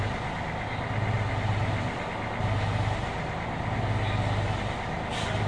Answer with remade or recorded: recorded